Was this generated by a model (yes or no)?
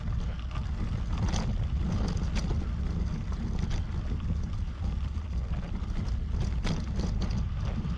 no